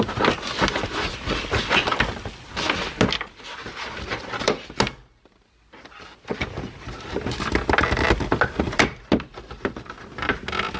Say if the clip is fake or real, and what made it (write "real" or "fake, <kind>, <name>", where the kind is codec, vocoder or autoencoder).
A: real